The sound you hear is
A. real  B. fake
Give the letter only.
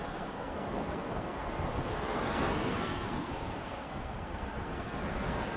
B